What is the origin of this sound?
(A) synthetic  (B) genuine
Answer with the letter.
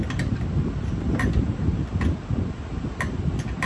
B